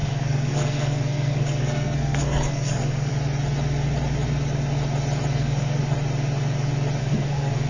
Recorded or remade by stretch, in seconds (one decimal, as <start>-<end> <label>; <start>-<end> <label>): 0.0-3.1 remade; 3.1-5.3 recorded; 5.3-5.8 remade; 5.8-7.0 recorded; 7.0-7.7 remade